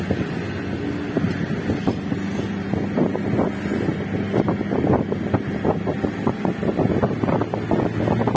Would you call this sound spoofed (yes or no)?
no